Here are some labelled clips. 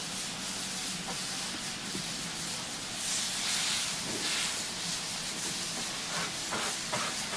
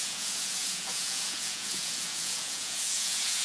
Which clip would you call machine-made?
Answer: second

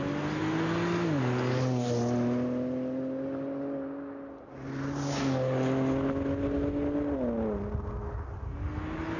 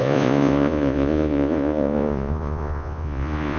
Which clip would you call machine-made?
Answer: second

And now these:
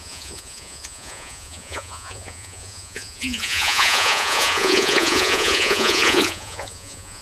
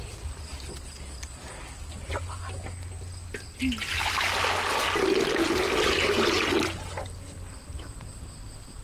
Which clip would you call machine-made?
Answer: first